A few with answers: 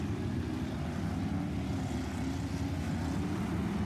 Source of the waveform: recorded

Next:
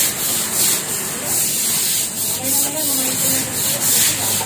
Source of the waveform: recorded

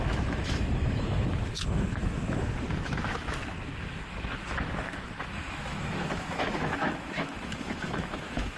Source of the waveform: remade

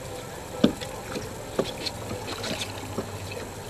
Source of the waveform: recorded